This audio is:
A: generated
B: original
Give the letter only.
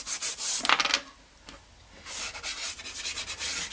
B